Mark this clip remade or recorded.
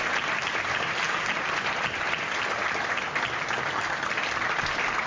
recorded